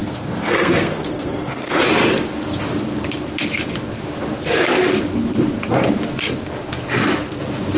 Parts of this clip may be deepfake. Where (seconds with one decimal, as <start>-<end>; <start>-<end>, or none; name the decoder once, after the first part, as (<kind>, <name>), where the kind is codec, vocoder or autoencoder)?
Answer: 0.0-1.8 (codec, SNAC)